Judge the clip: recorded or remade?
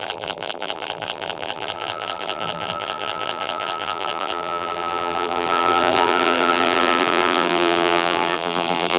remade